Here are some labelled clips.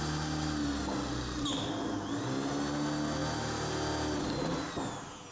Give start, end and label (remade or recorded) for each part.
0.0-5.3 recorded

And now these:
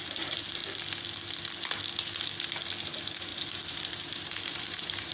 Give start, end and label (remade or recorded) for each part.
0.0-0.6 remade; 0.6-2.8 recorded; 2.8-5.1 remade

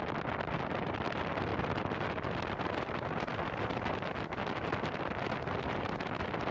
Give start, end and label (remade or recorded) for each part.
0.0-6.5 remade

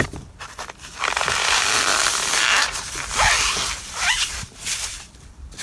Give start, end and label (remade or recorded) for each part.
0.0-1.9 remade; 1.9-3.9 recorded; 3.9-5.6 remade

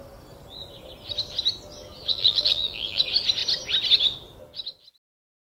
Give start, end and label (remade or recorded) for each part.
0.0-2.1 recorded; 2.1-3.0 remade; 3.0-5.5 recorded

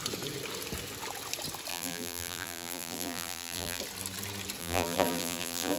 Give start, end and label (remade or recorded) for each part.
0.0-1.7 recorded; 1.7-3.8 remade; 3.8-4.6 recorded; 4.6-5.8 remade